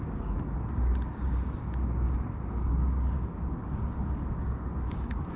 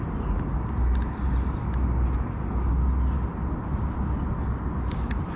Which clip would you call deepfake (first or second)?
first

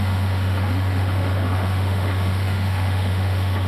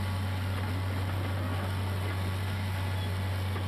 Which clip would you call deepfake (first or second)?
first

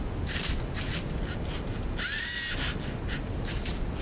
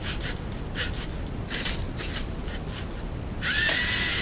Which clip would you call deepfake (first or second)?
second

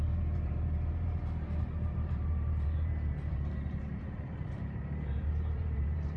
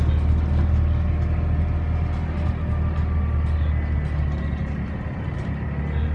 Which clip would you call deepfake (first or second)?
first